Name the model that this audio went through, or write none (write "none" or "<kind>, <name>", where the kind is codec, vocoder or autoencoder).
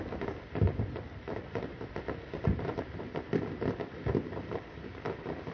vocoder, BigVGAN v2